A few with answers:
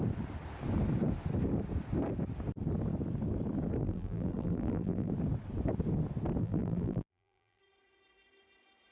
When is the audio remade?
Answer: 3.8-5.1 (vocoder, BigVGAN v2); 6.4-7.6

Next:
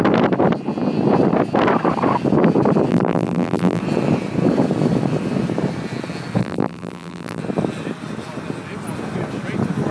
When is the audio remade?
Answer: 2.9-3.8 (vocoder, BigVGAN v2); 6.4-7.4

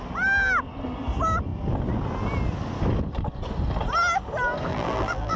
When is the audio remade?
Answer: 4.7-5.4 (vocoder, BigVGAN v2)

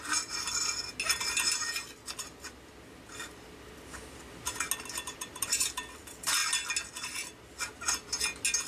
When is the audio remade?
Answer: none

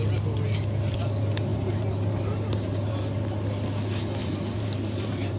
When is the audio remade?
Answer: 1.5-2.9 (vocoder, BigVGAN v2); 4.2-5.4

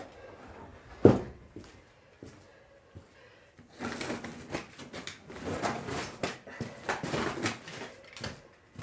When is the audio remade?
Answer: none

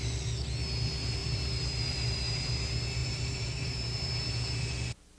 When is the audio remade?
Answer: 1.2-2.5 (vocoder, BigVGAN v2); 3.0-4.1